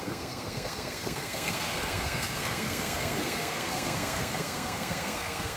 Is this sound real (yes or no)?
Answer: no